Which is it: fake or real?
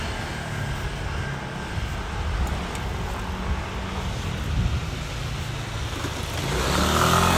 real